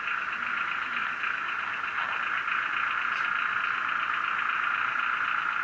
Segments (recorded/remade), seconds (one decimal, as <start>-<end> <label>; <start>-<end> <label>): 0.0-5.6 recorded